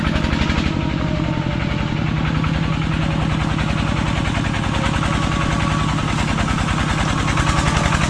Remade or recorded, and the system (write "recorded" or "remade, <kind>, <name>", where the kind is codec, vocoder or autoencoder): recorded